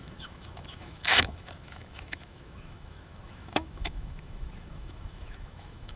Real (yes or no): no